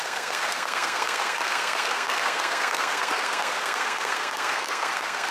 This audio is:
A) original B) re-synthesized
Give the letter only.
B